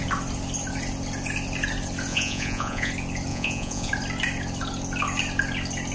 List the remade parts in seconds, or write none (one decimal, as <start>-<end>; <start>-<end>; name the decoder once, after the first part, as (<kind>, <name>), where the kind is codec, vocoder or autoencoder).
2.1-2.9 (vocoder, Vocos); 3.3-3.9